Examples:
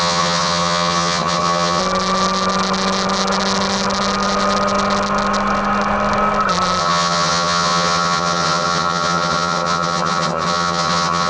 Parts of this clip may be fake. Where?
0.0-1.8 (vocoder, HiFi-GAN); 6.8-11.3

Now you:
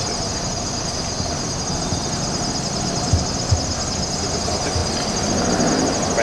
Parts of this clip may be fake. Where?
none

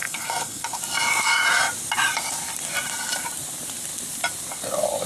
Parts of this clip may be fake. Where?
0.0-0.8 (codec, SNAC)

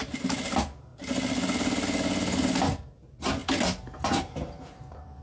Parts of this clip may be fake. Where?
none